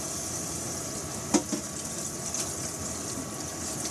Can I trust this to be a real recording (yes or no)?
yes